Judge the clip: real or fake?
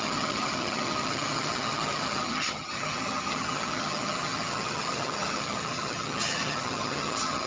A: fake